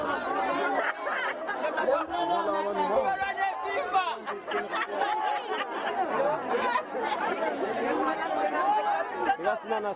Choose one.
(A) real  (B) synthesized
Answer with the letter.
A